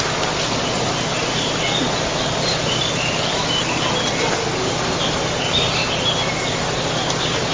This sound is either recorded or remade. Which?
recorded